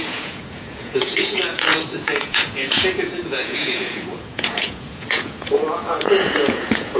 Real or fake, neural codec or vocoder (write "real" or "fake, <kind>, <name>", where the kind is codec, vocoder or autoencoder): fake, vocoder, Vocos